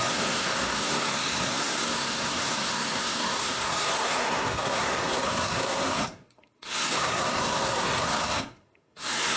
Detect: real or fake fake